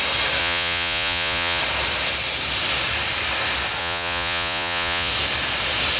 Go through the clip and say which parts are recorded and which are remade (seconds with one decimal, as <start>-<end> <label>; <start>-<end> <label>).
0.0-0.4 recorded; 0.4-1.6 remade; 1.6-3.8 recorded; 3.8-5.1 remade; 5.1-6.0 recorded

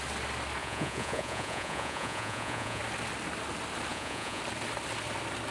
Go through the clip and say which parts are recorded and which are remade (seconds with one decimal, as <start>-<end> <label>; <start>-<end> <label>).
0.0-0.6 recorded; 0.6-2.8 remade; 2.8-3.9 recorded; 3.9-4.4 remade; 4.4-5.5 recorded